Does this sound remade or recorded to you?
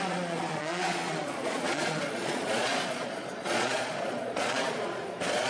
remade